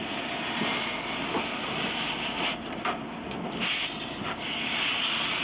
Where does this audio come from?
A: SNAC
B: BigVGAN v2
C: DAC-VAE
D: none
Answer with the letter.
D